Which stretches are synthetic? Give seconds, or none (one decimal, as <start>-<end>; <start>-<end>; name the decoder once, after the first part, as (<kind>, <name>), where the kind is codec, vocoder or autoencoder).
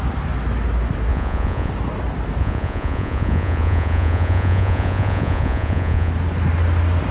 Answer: 1.1-1.7 (vocoder, Vocos); 2.4-6.1